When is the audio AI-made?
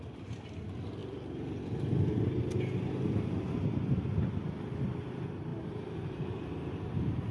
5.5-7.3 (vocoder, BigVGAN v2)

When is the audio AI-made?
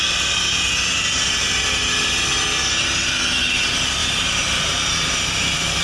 4.0-5.8 (vocoder, BigVGAN v2)